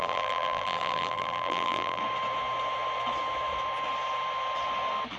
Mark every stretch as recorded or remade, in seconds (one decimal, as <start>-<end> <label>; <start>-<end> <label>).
0.0-2.0 remade; 2.0-5.2 recorded